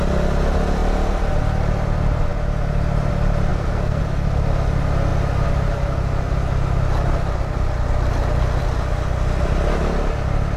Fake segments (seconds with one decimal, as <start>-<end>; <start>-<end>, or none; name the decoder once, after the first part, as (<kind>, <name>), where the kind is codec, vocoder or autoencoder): 3.5-4.0 (codec, SNAC)